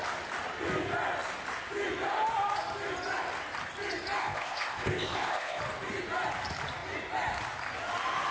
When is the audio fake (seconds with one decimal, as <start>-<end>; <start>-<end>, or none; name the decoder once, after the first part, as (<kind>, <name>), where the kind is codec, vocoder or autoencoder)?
4.2-5.6 (codec, ZipCodec)